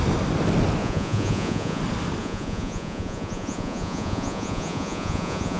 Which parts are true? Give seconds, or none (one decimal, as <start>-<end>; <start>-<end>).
0.0-0.8; 1.8-2.2